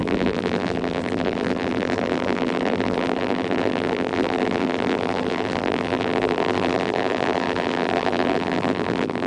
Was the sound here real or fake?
fake